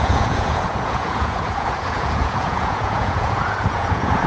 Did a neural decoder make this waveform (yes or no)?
yes